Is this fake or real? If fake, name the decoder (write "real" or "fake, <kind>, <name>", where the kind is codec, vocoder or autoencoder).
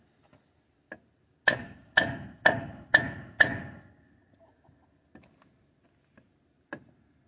real